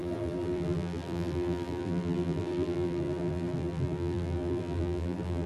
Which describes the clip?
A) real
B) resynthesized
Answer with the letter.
B